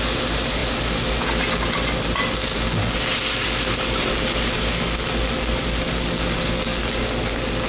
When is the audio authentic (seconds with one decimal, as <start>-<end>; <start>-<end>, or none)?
0.0-7.7

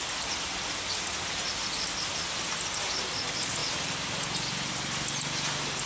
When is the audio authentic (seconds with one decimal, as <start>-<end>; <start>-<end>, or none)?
0.0-5.9

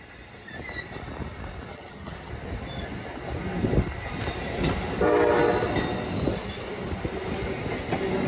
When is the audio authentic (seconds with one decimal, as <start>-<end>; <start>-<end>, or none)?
0.0-1.7; 2.3-8.3

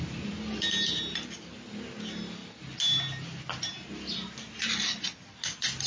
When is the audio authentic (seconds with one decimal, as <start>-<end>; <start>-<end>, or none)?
0.0-5.9

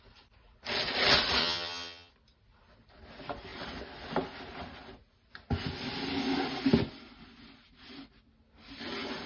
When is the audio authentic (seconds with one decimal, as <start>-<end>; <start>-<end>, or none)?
0.0-1.4; 2.1-9.3

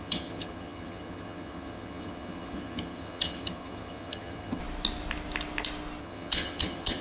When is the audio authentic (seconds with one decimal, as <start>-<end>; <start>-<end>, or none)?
4.6-6.0

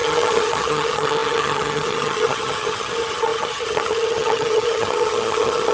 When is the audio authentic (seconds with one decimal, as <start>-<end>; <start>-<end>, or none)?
none

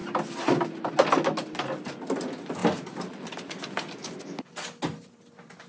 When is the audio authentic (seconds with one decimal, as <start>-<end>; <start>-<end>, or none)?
0.0-5.7